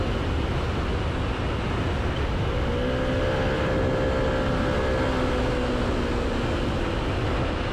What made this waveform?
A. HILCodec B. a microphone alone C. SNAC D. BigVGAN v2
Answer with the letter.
B